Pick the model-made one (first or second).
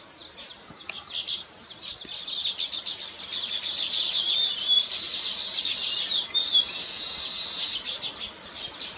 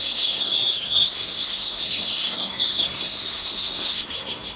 second